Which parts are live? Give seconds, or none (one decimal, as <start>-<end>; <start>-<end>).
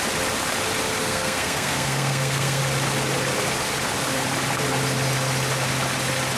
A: 0.0-1.0; 2.6-6.4